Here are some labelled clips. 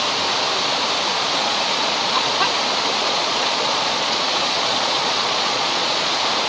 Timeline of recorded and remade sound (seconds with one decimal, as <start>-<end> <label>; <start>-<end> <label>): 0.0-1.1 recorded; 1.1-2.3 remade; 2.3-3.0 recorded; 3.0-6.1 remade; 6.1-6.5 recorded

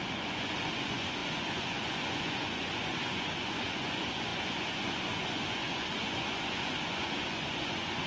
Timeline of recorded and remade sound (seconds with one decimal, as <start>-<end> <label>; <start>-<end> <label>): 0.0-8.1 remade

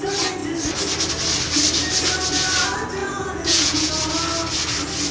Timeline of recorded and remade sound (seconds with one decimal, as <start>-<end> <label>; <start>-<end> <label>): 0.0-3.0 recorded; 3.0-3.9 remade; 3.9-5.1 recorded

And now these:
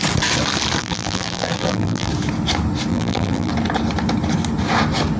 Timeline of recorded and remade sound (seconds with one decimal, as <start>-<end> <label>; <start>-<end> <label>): 0.0-0.8 recorded; 0.8-2.1 remade; 2.1-2.9 recorded; 2.9-3.5 remade; 3.5-5.2 recorded

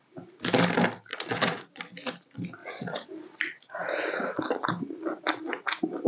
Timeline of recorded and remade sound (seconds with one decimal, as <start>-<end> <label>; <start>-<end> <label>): 0.0-1.1 recorded; 1.1-1.8 remade; 1.8-2.6 recorded; 2.6-3.1 remade; 3.1-6.1 recorded